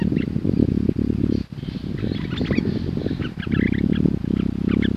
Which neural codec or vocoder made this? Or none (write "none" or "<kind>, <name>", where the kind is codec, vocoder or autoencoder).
none